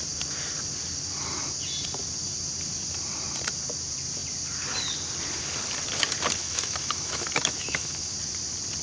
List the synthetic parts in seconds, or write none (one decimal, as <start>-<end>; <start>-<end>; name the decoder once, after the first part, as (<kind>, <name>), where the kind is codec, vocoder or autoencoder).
6.4-8.1 (autoencoder, DAC-VAE)